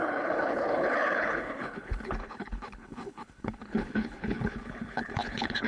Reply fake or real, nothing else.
fake